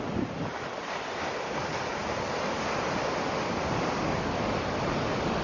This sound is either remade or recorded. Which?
recorded